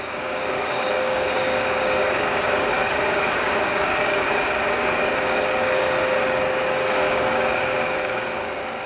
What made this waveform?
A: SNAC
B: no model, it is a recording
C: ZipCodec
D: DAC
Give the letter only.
D